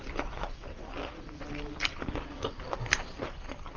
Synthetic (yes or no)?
yes